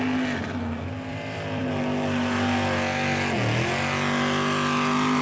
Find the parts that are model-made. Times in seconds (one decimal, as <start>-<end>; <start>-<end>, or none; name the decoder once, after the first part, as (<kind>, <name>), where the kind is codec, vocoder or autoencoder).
1.1-1.6 (vocoder, BigVGAN v2)